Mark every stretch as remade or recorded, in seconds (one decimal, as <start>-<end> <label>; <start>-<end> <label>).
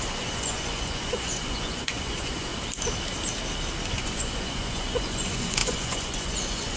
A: 0.0-2.5 remade; 2.5-3.9 recorded; 3.9-6.8 remade